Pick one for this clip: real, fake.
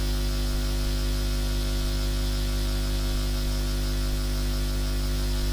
real